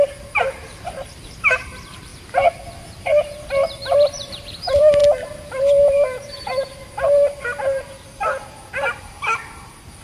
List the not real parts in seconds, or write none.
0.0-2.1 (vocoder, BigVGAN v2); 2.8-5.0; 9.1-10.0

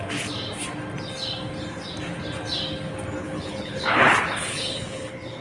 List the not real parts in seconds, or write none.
3.2-5.4 (codec, HILCodec)

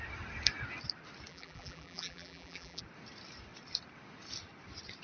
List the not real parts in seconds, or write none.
1.3-2.8 (vocoder, BigVGAN v2)

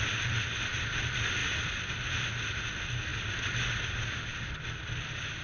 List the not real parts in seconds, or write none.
none

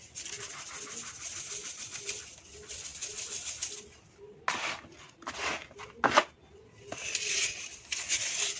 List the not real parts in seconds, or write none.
none